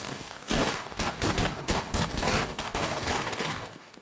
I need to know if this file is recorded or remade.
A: remade